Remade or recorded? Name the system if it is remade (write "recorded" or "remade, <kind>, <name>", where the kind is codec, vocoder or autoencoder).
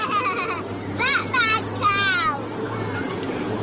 recorded